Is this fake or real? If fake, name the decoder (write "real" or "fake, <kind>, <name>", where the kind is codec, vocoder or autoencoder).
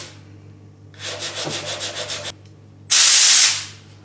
real